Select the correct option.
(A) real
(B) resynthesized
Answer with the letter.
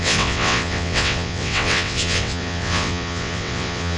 B